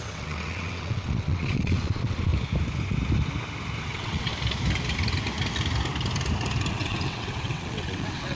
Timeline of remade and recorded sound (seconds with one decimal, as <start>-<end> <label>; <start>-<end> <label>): 0.0-2.3 remade; 2.3-3.8 recorded; 3.8-4.3 remade; 4.3-6.7 recorded; 6.7-8.4 remade